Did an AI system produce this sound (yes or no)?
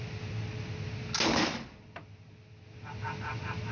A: no